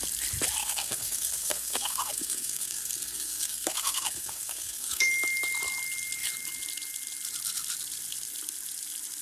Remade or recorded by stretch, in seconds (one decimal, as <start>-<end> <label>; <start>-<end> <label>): 0.0-0.6 recorded; 0.6-5.1 remade; 5.1-9.2 recorded